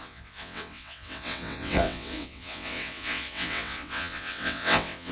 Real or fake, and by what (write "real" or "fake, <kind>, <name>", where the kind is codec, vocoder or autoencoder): fake, vocoder, WaveNeXt